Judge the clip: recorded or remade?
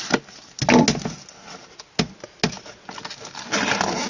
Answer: recorded